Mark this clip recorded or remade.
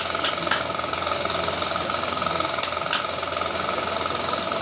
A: recorded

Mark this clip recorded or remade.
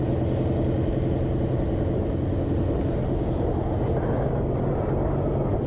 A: recorded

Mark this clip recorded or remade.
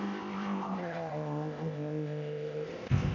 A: remade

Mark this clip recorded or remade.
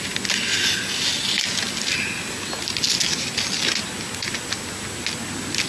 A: recorded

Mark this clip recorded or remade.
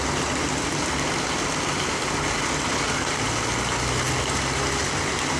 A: recorded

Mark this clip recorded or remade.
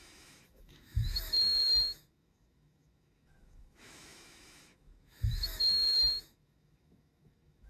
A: remade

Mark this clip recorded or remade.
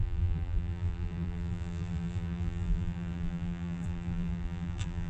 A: remade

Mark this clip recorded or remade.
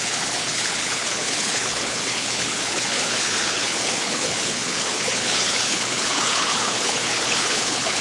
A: remade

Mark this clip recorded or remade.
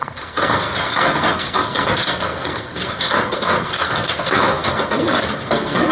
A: remade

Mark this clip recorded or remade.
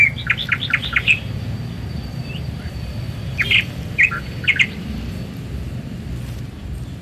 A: recorded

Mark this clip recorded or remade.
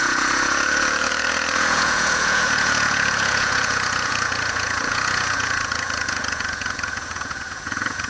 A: remade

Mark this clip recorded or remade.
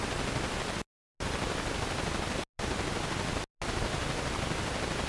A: recorded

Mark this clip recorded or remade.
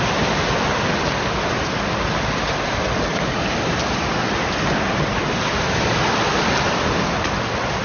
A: recorded